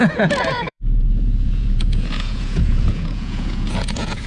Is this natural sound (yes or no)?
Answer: no